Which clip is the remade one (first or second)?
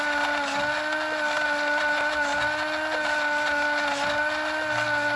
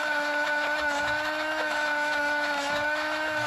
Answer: second